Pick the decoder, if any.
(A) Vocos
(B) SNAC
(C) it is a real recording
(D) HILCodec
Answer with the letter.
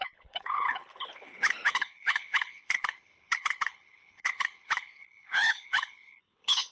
D